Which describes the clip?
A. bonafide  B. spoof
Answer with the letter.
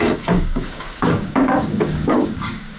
B